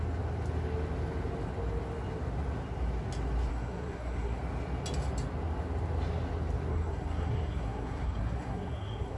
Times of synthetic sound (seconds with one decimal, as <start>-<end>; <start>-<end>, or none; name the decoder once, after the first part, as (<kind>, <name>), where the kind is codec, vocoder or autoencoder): 3.5-4.4 (codec, SNAC); 6.7-9.2